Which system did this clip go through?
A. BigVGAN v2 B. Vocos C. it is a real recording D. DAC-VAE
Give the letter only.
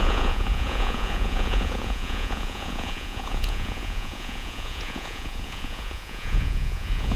B